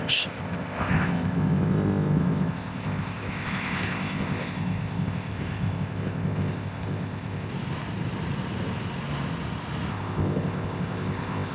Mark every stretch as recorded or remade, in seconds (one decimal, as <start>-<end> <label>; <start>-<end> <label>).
0.0-7.5 remade; 7.5-9.9 recorded; 9.9-11.5 remade